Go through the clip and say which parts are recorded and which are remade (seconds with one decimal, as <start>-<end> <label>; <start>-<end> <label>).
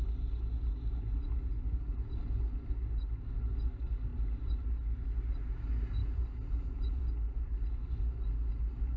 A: 0.0-4.1 recorded; 4.1-5.2 remade; 5.2-9.0 recorded